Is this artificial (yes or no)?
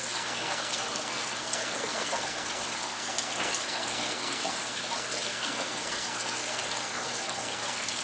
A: yes